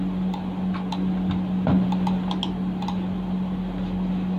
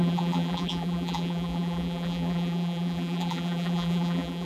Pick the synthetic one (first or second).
second